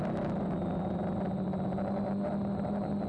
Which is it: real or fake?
real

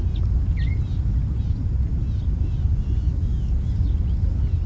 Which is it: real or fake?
real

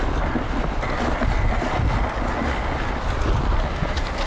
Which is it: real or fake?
real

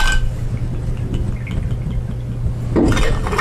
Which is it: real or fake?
real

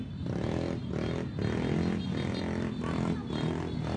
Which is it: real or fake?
real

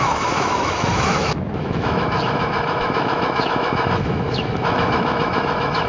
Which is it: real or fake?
fake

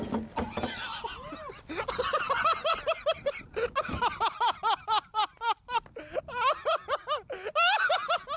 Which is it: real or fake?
real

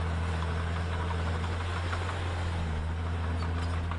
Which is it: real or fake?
real